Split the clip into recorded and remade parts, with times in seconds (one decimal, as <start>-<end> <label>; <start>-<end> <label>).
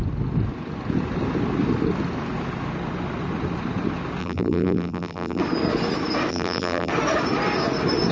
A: 0.0-4.2 recorded; 4.2-5.4 remade; 5.4-6.3 recorded; 6.3-6.9 remade; 6.9-8.1 recorded